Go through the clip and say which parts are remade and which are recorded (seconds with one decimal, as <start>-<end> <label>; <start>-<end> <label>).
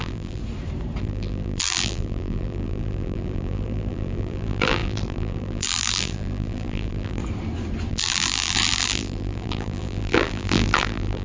0.0-0.4 remade; 0.4-1.0 recorded; 1.0-7.2 remade; 7.2-7.9 recorded; 7.9-11.2 remade